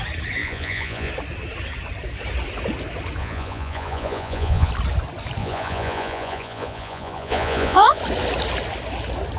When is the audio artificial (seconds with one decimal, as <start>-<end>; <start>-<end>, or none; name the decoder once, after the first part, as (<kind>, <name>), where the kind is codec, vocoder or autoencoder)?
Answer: 0.4-1.1 (vocoder, Vocos); 3.2-4.7; 5.4-8.0